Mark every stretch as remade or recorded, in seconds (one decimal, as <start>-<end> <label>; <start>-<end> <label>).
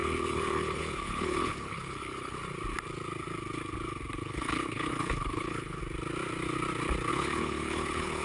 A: 0.0-2.4 remade; 2.4-4.2 recorded; 4.2-5.8 remade; 5.8-7.1 recorded; 7.1-8.2 remade